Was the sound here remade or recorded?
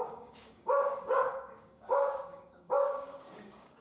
remade